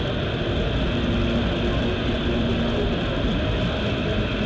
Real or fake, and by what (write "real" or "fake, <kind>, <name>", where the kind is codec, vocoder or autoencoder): real